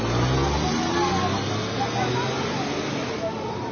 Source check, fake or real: real